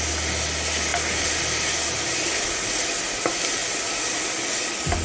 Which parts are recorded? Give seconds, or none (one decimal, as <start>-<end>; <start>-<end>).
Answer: 0.0-5.0